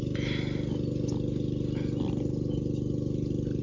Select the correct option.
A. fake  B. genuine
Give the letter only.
B